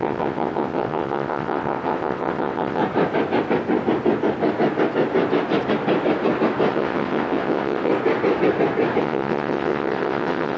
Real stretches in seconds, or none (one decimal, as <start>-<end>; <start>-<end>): 2.8-6.7; 7.9-9.0